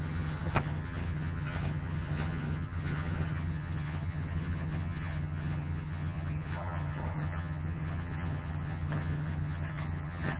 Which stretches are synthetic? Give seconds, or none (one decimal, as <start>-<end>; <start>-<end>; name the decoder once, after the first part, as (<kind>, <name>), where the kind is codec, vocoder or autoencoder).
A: 0.0-10.4 (vocoder, HiFi-GAN)